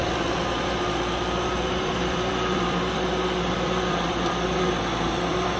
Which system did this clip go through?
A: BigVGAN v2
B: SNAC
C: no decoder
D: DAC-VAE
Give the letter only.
A